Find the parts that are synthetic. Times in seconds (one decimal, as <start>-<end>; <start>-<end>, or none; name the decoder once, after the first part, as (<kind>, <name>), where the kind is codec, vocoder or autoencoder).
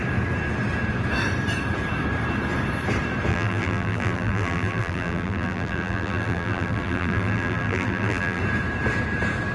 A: 3.3-8.4 (vocoder, BigVGAN v2)